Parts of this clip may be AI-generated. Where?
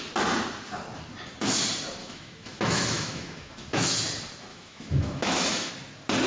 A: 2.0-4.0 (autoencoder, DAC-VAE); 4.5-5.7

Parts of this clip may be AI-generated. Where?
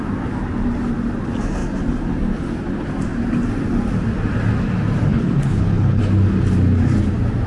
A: 5.1-6.0 (codec, HILCodec)